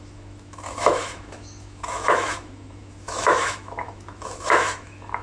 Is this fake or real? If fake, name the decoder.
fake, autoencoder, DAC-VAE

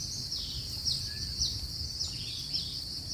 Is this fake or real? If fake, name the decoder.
real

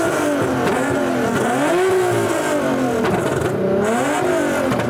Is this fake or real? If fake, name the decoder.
real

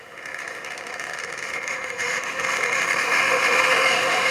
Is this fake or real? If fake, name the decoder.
fake, autoencoder, DAC-VAE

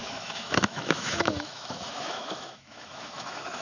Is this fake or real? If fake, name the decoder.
fake, autoencoder, DAC-VAE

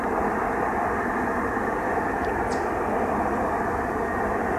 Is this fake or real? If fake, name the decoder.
real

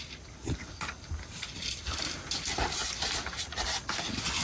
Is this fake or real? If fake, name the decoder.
real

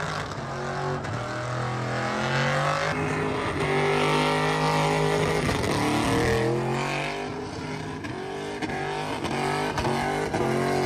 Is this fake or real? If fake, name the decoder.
real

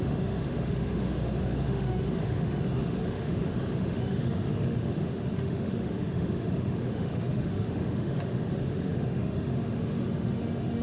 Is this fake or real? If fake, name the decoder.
fake, autoencoder, DAC-VAE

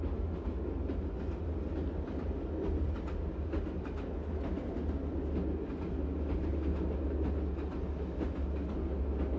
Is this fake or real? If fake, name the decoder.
real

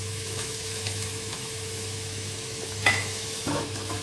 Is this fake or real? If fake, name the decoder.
fake, autoencoder, DAC-VAE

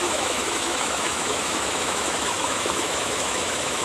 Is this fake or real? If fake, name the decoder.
fake, autoencoder, DAC-VAE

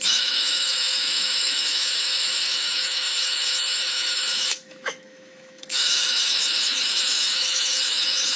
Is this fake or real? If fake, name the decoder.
fake, autoencoder, DAC-VAE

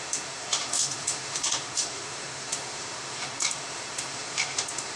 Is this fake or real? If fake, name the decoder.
fake, autoencoder, DAC-VAE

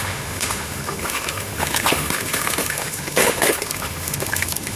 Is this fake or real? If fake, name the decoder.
fake, autoencoder, DAC-VAE